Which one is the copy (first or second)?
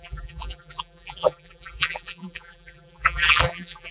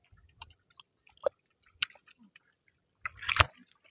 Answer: first